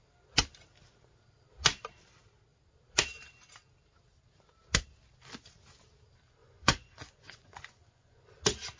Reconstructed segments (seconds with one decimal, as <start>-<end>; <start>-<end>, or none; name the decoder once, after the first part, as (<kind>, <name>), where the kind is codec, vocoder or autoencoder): 6.4-8.3 (vocoder, Vocos)